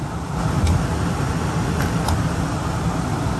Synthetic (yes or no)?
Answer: no